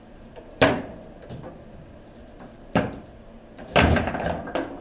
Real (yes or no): yes